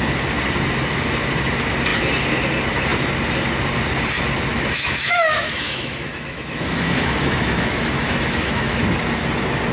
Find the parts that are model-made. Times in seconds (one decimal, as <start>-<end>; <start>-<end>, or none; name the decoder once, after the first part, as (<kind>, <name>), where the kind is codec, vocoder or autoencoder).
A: 4.5-8.8 (autoencoder, DAC-VAE)